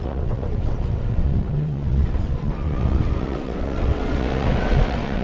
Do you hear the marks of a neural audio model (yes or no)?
yes